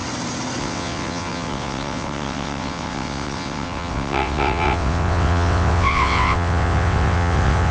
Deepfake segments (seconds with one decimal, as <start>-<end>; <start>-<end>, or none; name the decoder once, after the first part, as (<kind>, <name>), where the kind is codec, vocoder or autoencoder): 0.6-7.7 (vocoder, WaveNeXt)